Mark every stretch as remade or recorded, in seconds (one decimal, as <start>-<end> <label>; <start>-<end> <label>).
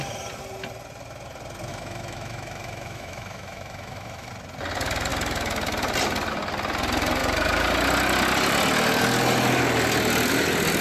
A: 0.0-1.7 recorded; 1.7-4.3 remade; 4.3-10.8 recorded